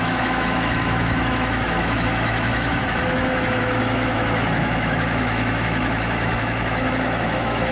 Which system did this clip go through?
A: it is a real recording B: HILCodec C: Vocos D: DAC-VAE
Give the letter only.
D